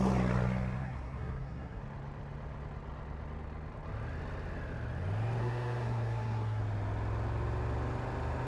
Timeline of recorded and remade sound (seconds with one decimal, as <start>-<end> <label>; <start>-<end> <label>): 0.0-0.8 recorded; 0.8-1.8 remade; 1.8-5.4 recorded; 5.4-6.6 remade; 6.6-8.5 recorded